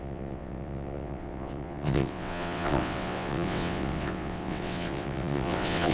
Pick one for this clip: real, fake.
fake